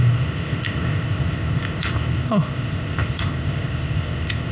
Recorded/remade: remade